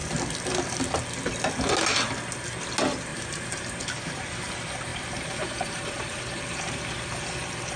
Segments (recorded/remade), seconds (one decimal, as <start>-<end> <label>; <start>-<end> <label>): 0.0-3.1 recorded; 3.1-4.5 remade; 4.5-4.9 recorded; 4.9-6.8 remade; 6.8-7.8 recorded

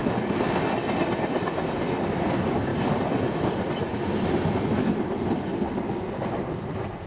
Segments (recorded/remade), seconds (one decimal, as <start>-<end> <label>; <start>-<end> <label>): 0.0-0.7 recorded; 0.7-5.5 remade; 5.5-6.4 recorded; 6.4-7.1 remade